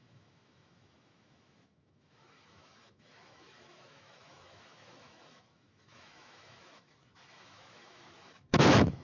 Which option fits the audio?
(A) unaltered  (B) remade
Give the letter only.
B